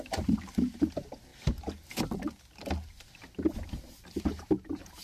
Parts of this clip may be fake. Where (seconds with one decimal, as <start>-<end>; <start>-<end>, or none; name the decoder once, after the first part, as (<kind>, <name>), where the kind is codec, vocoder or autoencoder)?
0.0-1.3 (vocoder, BigVGAN v2); 4.2-5.0